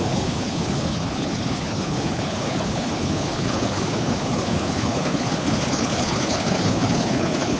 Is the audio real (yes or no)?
no